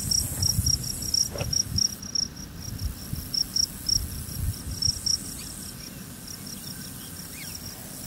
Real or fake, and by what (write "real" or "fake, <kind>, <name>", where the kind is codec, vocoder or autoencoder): real